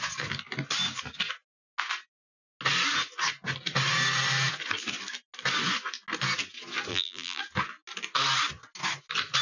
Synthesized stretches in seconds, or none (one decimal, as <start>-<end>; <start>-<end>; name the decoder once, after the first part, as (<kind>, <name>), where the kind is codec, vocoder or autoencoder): 6.9-7.4 (vocoder, BigVGAN v2)